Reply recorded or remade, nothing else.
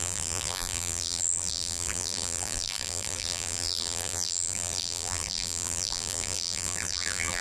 remade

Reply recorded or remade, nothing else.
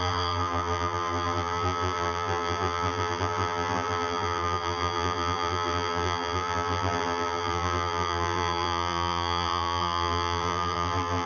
remade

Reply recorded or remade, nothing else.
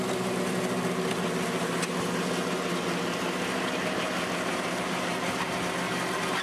recorded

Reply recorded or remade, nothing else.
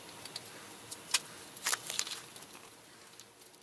recorded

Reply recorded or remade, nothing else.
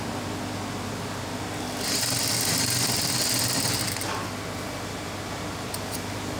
recorded